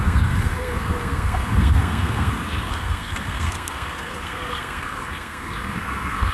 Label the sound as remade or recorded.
remade